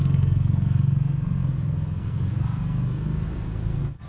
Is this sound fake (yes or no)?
yes